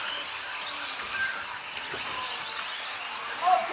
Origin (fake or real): real